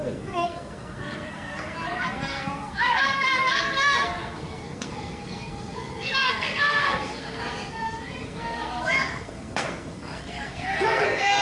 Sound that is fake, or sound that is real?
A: fake